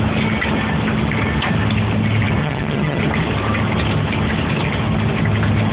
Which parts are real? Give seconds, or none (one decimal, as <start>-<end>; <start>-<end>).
0.0-2.4; 3.0-5.7